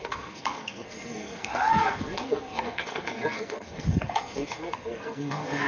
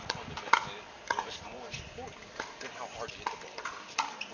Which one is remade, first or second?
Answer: first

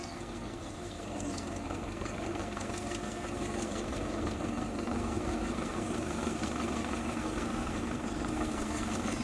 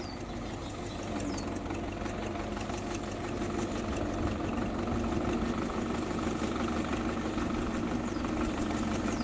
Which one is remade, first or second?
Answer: first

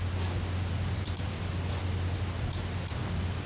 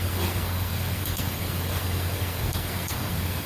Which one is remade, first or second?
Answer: second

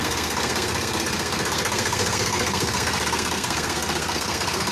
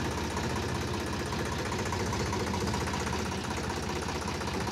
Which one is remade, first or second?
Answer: first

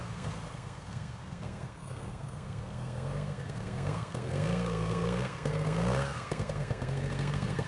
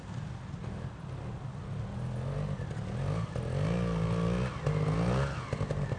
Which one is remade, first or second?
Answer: first